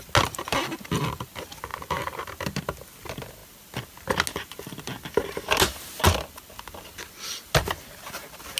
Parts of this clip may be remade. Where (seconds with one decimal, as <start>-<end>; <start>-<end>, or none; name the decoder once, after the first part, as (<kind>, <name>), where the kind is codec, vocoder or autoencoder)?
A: none